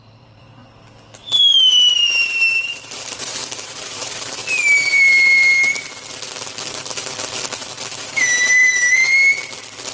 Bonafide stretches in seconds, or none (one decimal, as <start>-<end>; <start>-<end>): 0.6-1.6; 4.4-8.0; 9.0-9.9